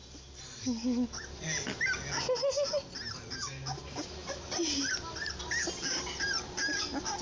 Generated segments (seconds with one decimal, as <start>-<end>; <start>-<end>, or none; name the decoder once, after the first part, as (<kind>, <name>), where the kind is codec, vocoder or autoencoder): 0.6-1.2 (codec, DAC)